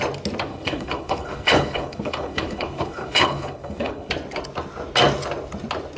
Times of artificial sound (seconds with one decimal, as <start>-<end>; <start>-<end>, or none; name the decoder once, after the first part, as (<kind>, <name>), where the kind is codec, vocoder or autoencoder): 0.5-4.1 (codec, HILCodec)